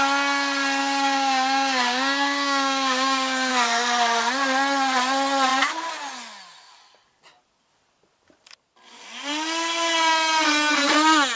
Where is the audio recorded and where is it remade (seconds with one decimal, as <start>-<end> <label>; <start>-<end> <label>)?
0.0-0.8 recorded; 0.8-3.5 remade; 3.5-11.4 recorded